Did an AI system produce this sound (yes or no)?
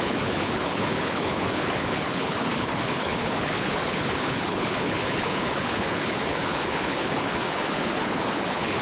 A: yes